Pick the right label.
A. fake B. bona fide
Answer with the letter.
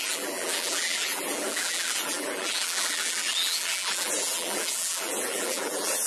A